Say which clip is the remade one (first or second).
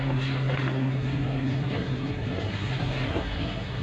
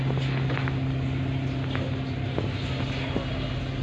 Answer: first